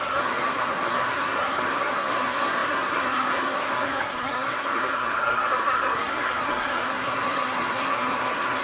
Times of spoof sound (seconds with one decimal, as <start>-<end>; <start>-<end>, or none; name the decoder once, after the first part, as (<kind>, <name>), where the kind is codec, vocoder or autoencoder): 0.0-8.6 (codec, SNAC)